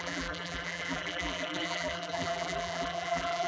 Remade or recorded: remade